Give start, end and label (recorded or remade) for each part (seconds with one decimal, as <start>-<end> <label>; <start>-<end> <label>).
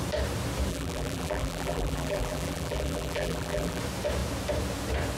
0.0-0.7 recorded; 0.7-3.8 remade; 3.8-5.2 recorded